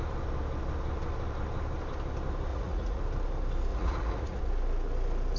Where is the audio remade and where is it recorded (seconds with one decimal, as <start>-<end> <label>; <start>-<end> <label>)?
0.0-2.5 recorded; 2.5-3.0 remade; 3.0-3.7 recorded; 3.7-4.4 remade; 4.4-5.4 recorded